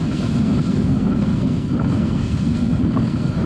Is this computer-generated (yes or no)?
yes